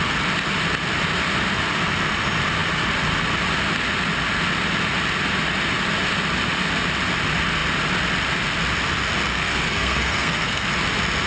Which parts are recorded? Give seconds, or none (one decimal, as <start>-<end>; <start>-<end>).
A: 0.0-9.3; 10.7-11.3